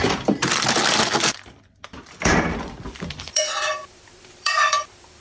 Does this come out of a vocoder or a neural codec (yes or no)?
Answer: yes